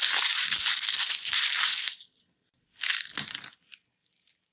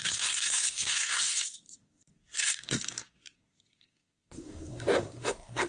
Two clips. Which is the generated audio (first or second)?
second